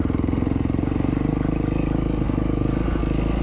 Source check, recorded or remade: recorded